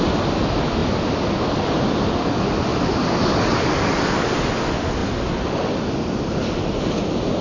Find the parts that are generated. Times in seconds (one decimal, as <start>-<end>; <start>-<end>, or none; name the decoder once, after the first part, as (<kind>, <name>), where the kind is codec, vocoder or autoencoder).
none